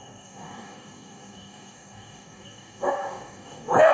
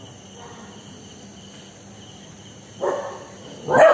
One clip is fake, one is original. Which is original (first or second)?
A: second